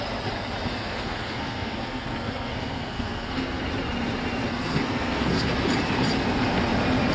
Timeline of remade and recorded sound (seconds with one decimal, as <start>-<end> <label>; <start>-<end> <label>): 0.0-0.7 recorded; 0.7-3.6 remade; 3.6-4.5 recorded; 4.5-5.5 remade; 5.5-7.1 recorded